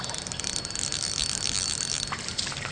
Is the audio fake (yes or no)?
no